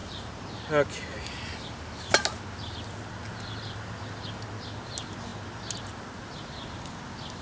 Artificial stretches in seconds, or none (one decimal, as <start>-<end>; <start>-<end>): 0.0-0.7